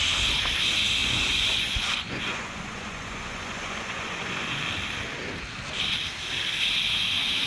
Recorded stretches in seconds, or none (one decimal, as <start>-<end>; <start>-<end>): 0.0-1.0; 4.6-7.5